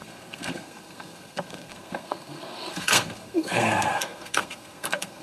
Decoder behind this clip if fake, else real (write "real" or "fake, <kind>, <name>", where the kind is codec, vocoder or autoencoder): fake, codec, SNAC